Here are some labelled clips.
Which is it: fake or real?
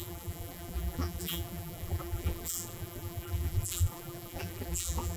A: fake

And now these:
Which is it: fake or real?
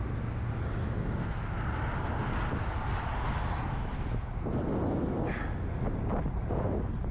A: real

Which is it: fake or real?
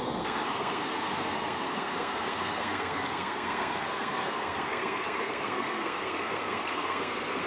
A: fake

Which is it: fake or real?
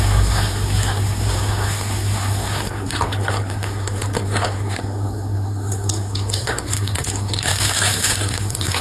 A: fake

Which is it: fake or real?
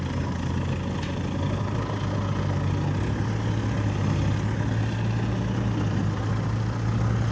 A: real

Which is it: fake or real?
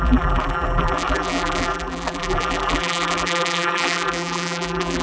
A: fake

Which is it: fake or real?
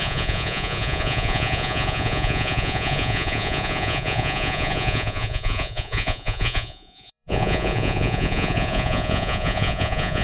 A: fake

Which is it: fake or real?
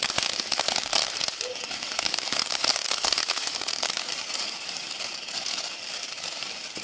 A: fake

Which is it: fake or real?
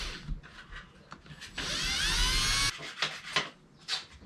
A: real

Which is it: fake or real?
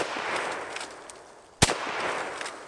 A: real